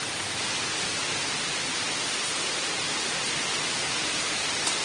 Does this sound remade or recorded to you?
recorded